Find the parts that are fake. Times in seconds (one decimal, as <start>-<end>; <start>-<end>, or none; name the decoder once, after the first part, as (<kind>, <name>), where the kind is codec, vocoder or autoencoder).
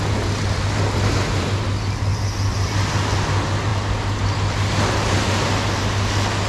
none